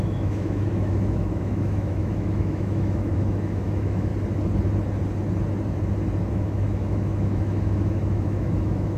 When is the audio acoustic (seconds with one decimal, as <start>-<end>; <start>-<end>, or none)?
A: 4.1-6.3

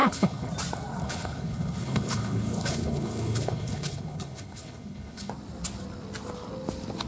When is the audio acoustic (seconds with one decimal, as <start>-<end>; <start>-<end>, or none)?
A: 0.5-1.0; 5.3-7.1

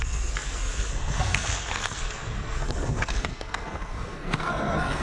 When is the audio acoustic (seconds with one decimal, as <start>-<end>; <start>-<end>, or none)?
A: none

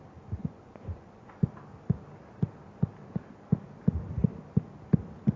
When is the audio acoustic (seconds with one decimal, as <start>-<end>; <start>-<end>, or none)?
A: 0.0-0.4; 1.4-5.4

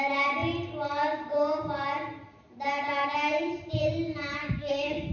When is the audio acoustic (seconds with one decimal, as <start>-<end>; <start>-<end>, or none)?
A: 0.0-4.4

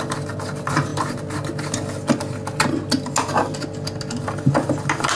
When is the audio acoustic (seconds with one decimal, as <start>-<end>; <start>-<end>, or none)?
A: 0.0-5.1

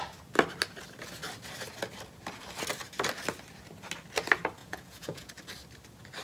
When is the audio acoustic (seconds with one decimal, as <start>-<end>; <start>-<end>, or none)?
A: 0.0-4.6; 5.3-6.2

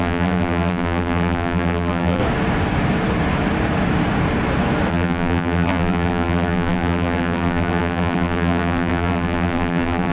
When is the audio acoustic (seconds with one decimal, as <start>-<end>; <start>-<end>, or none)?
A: 2.2-4.9